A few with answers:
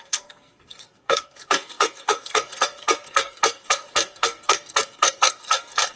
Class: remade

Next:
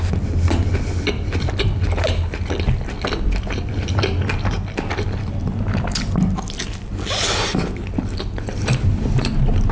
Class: recorded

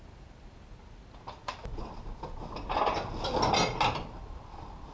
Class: recorded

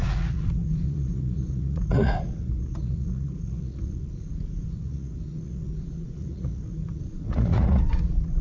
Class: remade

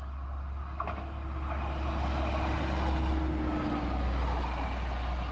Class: recorded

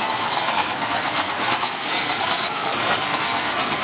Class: remade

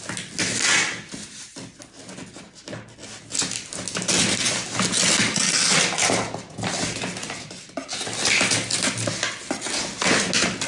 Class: recorded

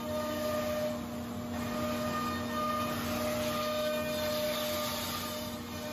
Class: recorded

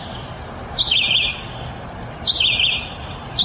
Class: recorded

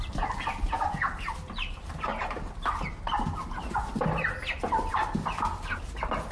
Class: recorded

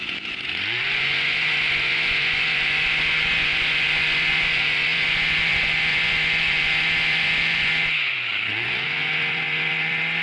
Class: remade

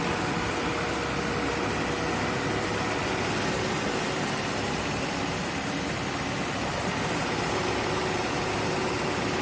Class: recorded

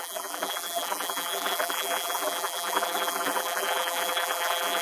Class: remade